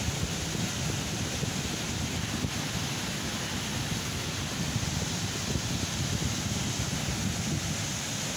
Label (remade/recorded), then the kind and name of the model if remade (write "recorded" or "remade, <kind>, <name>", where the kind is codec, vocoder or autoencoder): recorded